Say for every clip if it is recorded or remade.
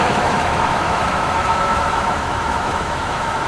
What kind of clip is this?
remade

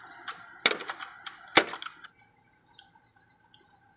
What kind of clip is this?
recorded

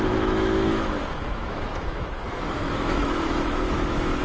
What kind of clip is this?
remade